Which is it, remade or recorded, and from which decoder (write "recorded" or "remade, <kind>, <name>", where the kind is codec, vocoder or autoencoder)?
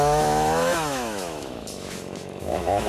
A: remade, autoencoder, DAC-VAE